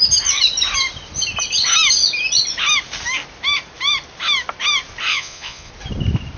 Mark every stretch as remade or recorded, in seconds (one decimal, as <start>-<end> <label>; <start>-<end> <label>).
0.0-5.1 recorded; 5.1-5.7 remade; 5.7-6.4 recorded